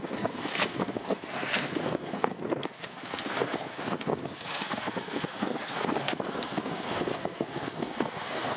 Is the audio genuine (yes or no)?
no